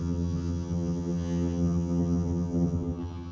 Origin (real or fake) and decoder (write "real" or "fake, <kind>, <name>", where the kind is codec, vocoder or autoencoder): fake, vocoder, HiFi-GAN